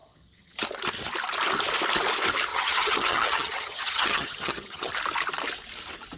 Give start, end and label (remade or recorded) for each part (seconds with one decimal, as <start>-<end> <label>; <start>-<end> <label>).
0.0-0.6 remade; 0.6-2.5 recorded; 2.5-4.9 remade; 4.9-6.2 recorded